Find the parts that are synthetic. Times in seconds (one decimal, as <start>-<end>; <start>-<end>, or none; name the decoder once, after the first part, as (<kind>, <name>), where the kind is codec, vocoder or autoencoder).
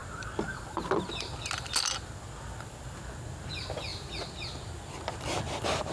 none